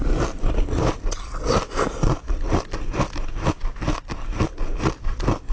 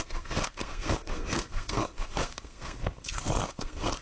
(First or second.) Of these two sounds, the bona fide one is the first